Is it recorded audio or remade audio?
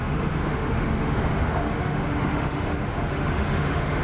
remade